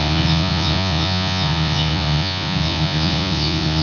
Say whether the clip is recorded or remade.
remade